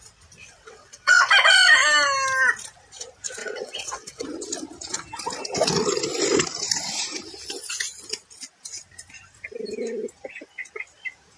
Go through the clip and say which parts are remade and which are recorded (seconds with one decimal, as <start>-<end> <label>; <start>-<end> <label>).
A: 0.0-0.4 recorded; 0.4-1.3 remade; 1.3-3.4 recorded; 3.4-4.2 remade; 4.2-11.4 recorded